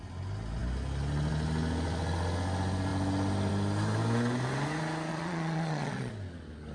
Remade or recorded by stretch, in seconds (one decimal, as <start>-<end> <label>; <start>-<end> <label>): 0.0-5.1 recorded; 5.1-6.1 remade; 6.1-6.7 recorded